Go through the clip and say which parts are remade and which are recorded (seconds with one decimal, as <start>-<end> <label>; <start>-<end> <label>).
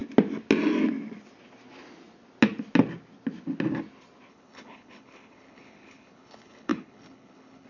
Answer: 0.0-4.3 recorded; 4.3-7.7 remade